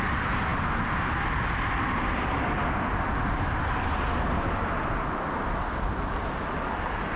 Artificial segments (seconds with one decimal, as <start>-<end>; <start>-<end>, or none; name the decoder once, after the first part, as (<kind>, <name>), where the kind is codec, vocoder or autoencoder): none